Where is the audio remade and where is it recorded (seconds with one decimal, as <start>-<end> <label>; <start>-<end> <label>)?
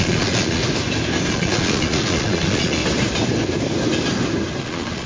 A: 0.0-0.6 remade; 0.6-1.3 recorded; 1.3-2.8 remade; 2.8-4.6 recorded; 4.6-5.1 remade